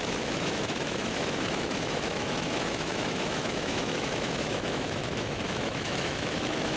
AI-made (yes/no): yes